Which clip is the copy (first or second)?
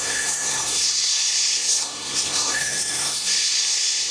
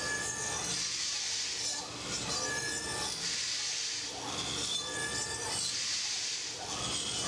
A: first